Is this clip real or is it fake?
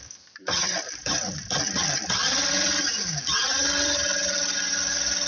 fake